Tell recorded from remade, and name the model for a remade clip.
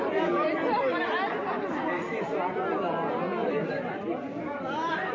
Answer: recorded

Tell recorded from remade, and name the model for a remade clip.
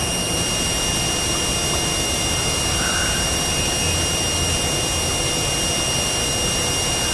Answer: recorded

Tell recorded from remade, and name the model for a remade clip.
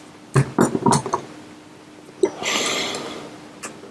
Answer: recorded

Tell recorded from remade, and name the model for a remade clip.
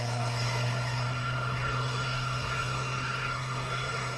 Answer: remade, codec, SNAC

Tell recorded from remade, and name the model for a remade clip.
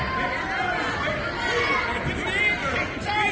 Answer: recorded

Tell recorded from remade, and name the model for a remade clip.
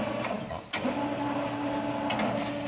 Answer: recorded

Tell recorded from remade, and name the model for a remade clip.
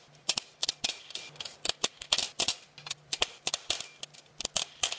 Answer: recorded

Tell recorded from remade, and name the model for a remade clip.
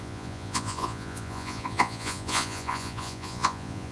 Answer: remade, vocoder, Vocos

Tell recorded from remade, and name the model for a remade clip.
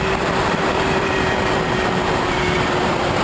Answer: remade, vocoder, BigVGAN v2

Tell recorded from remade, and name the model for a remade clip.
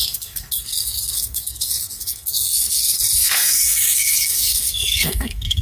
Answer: remade, codec, SNAC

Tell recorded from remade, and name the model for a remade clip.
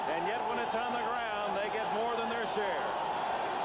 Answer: recorded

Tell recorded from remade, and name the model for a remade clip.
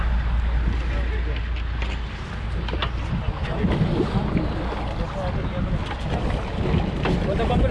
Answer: recorded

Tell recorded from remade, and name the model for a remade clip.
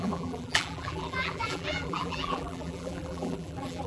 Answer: remade, vocoder, BigVGAN v2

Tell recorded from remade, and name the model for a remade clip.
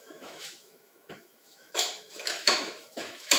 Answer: remade, autoencoder, DAC-VAE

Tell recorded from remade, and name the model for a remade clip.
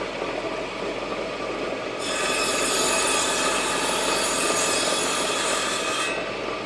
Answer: recorded